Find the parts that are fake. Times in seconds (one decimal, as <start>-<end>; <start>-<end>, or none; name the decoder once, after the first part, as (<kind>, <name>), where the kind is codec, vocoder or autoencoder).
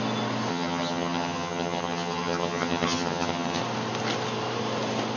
0.5-3.6 (vocoder, HiFi-GAN)